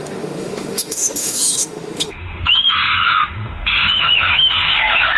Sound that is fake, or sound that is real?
fake